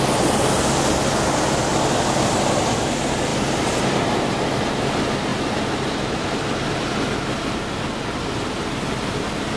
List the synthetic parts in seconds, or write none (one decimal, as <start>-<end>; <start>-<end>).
none